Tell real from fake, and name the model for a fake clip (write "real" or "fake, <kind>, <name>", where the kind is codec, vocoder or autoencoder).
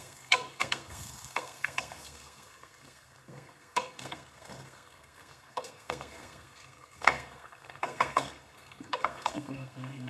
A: fake, codec, SNAC